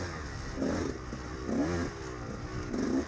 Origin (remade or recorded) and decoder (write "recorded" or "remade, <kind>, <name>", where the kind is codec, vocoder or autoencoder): recorded